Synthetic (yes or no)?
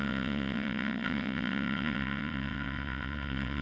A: yes